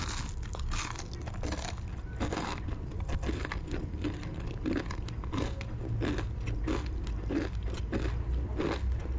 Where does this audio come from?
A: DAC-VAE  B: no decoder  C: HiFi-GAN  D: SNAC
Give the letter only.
B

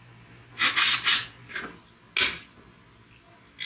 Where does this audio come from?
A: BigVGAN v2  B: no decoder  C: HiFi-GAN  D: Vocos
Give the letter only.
B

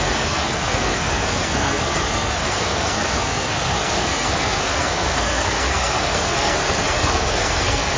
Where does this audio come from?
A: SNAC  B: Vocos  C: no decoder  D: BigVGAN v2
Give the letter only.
A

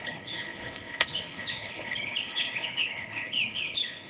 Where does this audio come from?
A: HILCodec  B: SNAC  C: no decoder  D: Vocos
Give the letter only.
A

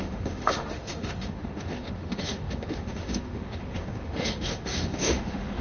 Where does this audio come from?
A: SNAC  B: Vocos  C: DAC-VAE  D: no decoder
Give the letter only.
C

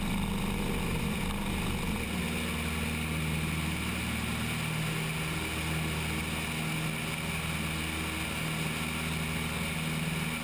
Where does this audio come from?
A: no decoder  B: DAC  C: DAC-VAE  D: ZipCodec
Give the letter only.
A